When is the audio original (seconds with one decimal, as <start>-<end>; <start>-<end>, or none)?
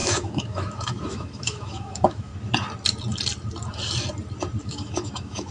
2.3-4.6